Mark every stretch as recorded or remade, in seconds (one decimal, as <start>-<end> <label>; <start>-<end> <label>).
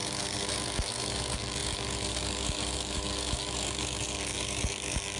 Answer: 0.0-5.2 remade